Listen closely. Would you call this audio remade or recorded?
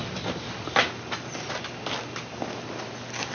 recorded